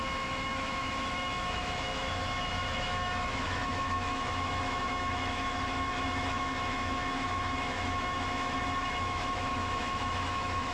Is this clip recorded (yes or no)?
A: no